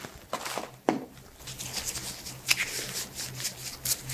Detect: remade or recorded recorded